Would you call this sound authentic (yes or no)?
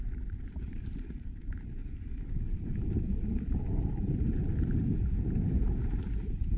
no